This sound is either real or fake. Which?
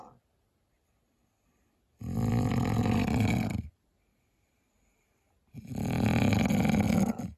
real